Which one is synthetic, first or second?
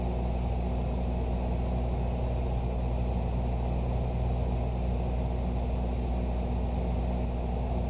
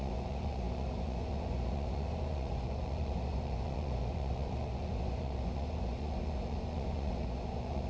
second